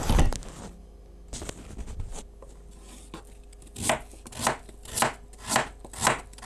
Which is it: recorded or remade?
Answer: recorded